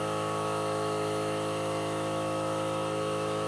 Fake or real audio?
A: fake